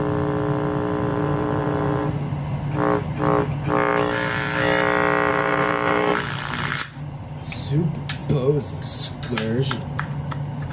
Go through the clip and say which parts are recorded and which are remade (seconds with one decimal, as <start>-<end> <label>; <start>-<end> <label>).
0.0-1.1 recorded; 1.1-2.1 remade; 2.1-5.3 recorded; 5.3-6.1 remade; 6.1-10.7 recorded